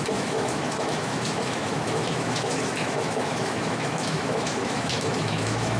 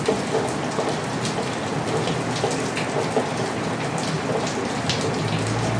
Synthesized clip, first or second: first